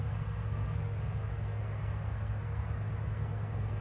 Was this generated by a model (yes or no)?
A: yes